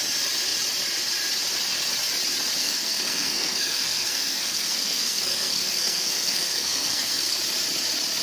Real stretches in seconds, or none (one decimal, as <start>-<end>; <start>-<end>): 0.0-2.6; 7.4-8.2